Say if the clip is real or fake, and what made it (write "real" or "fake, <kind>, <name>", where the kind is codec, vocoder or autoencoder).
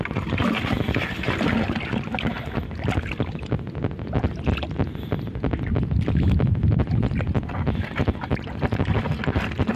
real